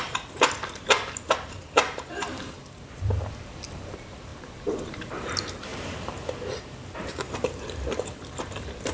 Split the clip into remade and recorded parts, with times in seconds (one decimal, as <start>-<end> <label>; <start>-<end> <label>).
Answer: 0.0-8.9 remade